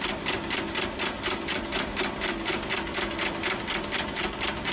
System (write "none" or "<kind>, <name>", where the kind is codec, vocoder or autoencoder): none